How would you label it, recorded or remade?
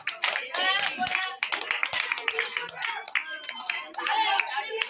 recorded